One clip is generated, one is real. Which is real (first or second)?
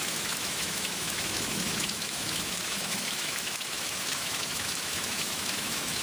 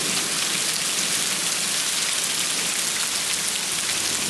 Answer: second